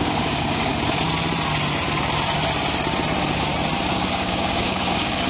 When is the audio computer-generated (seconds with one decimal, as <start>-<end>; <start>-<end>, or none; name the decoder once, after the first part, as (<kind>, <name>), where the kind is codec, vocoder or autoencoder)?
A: 0.0-0.7 (codec, DAC); 3.9-5.3